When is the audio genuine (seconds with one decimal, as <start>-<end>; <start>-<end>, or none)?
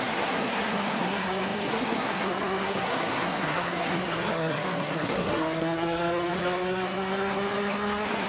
none